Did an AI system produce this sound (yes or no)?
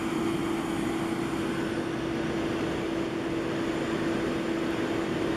no